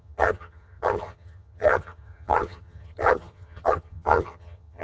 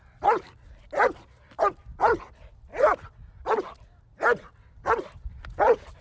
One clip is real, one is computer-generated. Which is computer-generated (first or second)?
first